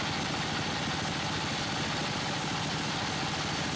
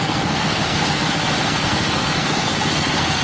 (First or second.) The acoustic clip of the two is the first